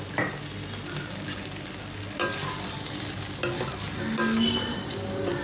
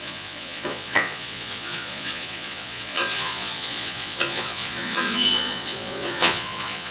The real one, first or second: first